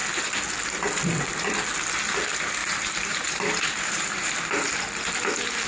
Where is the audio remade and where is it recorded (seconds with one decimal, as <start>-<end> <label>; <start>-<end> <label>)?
0.0-2.6 recorded; 2.6-4.8 remade; 4.8-5.7 recorded